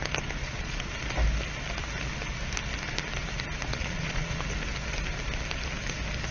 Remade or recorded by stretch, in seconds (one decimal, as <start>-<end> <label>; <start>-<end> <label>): 0.0-0.4 recorded; 0.4-0.9 remade; 0.9-3.7 recorded; 3.7-4.4 remade; 4.4-6.3 recorded